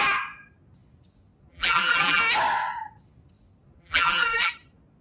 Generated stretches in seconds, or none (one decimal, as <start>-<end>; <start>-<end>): 1.5-2.2; 3.8-4.5